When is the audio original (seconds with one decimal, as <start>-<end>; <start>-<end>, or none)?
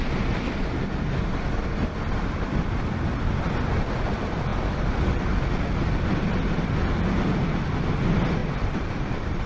0.0-8.4